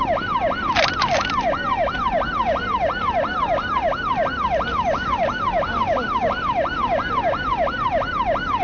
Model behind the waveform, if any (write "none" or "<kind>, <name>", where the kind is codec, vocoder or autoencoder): none